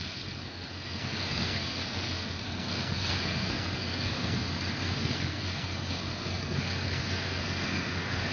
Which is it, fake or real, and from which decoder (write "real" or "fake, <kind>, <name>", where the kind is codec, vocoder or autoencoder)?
fake, codec, SNAC